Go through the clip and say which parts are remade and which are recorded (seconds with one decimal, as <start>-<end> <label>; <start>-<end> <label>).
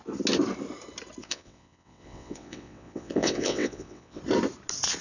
0.0-1.2 recorded; 1.2-4.2 remade; 4.2-5.0 recorded